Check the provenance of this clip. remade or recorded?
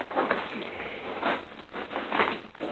recorded